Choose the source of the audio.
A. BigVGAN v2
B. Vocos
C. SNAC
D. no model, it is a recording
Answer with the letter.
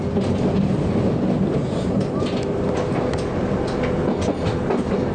D